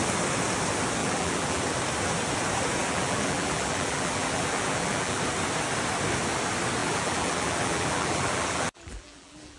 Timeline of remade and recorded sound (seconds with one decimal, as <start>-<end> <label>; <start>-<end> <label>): 0.0-1.0 recorded; 1.0-1.6 remade; 1.6-2.8 recorded; 2.8-5.2 remade; 5.2-6.8 recorded; 6.8-9.6 remade